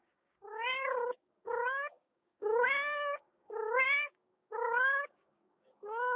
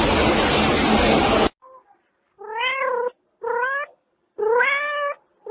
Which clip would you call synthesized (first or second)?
first